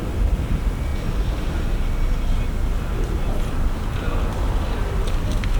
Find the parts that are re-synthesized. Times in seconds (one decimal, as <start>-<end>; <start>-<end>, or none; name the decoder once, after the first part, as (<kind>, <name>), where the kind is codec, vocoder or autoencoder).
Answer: 0.0-0.9 (vocoder, BigVGAN v2); 4.3-4.8